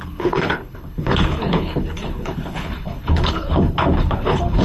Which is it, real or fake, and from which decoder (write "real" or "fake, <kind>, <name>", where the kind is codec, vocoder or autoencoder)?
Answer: fake, codec, HILCodec